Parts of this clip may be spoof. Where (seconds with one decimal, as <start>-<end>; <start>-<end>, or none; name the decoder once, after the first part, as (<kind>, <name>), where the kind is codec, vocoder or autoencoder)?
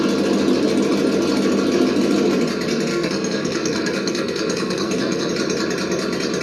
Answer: 2.9-5.3 (codec, SNAC)